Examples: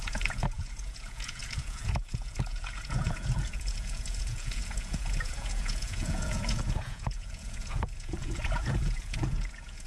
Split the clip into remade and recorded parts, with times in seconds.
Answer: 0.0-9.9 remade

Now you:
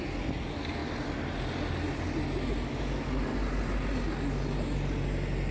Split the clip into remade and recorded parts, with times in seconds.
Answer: 0.0-5.5 recorded

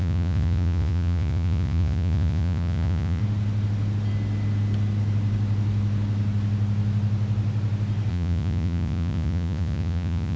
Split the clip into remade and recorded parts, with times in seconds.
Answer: 0.0-3.2 remade; 3.2-8.1 recorded; 8.1-10.4 remade

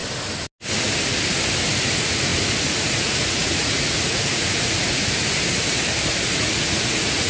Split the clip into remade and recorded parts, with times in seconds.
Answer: 0.0-1.9 recorded; 1.9-5.0 remade; 5.0-6.1 recorded; 6.1-7.3 remade